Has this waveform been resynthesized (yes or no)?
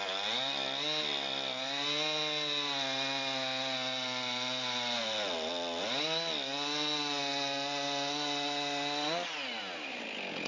no